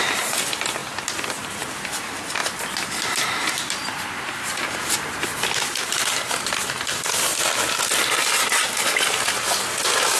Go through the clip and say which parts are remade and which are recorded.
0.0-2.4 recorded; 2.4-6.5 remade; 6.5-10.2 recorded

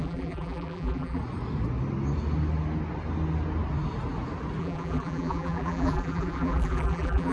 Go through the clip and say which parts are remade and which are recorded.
0.0-1.2 remade; 1.2-4.6 recorded; 4.6-7.3 remade

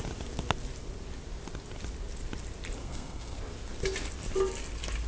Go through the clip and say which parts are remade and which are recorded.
0.0-2.8 recorded; 2.8-3.4 remade; 3.4-5.1 recorded

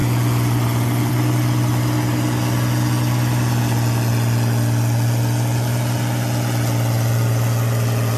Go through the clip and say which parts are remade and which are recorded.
0.0-8.2 recorded

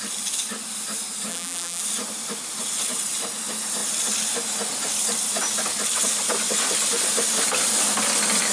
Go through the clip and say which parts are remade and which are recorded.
0.0-1.3 recorded; 1.3-1.8 remade; 1.8-8.5 recorded

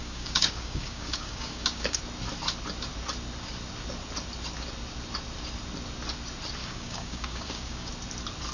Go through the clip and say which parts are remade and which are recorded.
0.0-2.0 remade; 2.0-6.6 recorded; 6.6-7.9 remade; 7.9-8.5 recorded

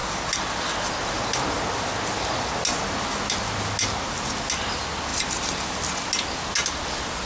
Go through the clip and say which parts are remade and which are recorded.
0.0-7.3 recorded

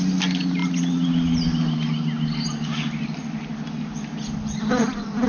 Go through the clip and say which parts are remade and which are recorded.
0.0-5.3 recorded